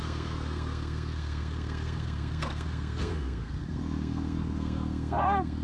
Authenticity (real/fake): fake